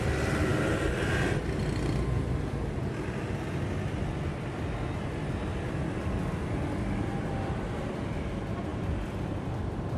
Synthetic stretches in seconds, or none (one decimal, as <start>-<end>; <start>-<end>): none